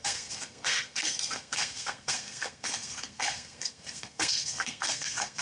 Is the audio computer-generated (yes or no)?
yes